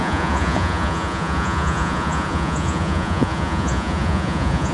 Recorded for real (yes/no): no